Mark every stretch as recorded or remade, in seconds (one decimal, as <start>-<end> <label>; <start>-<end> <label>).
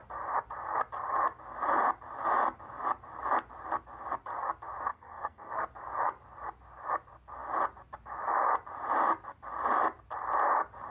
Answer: 0.0-4.9 recorded; 4.9-5.5 remade; 5.5-10.9 recorded